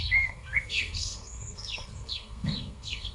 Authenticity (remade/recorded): remade